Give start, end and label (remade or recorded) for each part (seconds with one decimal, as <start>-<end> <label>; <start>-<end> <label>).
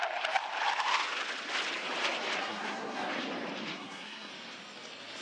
0.0-2.4 recorded; 2.4-3.1 remade; 3.1-3.7 recorded; 3.7-4.3 remade; 4.3-5.2 recorded